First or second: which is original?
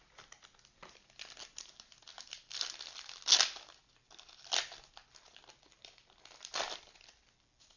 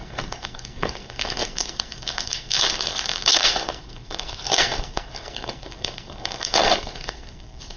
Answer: first